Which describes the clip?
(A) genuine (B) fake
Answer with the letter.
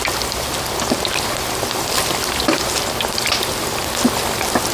A